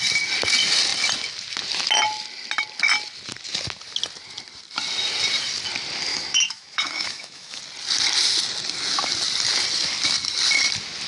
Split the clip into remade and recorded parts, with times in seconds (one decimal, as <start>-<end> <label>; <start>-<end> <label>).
0.0-6.1 recorded; 6.1-7.6 remade; 7.6-11.1 recorded